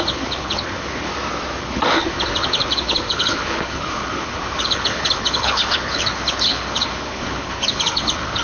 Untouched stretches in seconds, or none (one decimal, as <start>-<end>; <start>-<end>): 1.1-1.6